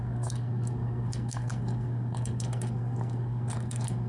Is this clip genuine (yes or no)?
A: no